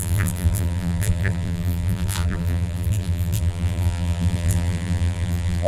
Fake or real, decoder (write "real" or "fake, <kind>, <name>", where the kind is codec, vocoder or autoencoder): fake, vocoder, BigVGAN v2